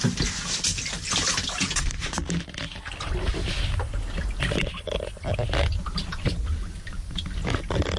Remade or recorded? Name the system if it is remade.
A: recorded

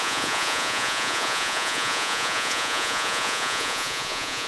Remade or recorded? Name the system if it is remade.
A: remade, vocoder, Vocos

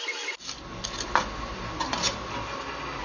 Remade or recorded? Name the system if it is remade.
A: recorded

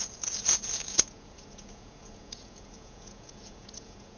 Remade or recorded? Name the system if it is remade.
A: remade, vocoder, Vocos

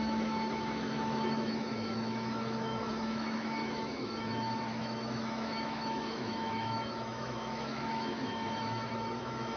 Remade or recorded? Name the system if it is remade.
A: remade, autoencoder, DAC-VAE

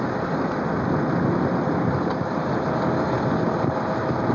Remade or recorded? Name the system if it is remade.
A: recorded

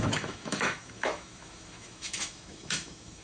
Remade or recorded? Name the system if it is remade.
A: remade, autoencoder, DAC-VAE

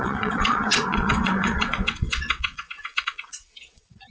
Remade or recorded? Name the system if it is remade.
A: remade, vocoder, WaveNeXt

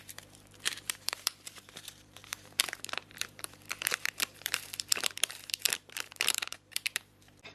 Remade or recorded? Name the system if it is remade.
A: remade, vocoder, BigVGAN v2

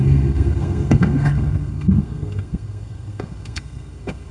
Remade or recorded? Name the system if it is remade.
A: remade, codec, SNAC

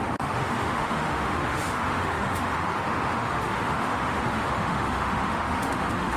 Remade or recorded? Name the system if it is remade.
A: remade, autoencoder, DAC-VAE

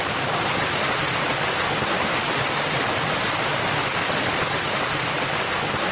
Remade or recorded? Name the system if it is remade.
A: recorded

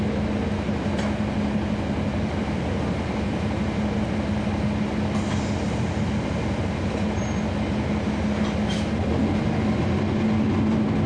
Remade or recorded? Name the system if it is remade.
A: recorded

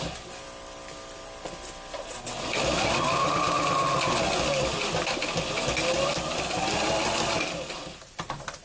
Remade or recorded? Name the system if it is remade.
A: recorded